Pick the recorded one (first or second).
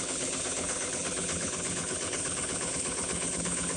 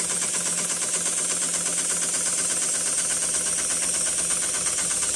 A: second